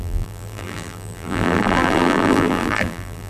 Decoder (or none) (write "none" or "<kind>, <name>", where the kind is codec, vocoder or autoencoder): vocoder, BigVGAN v2